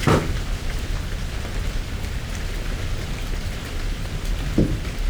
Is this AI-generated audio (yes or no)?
no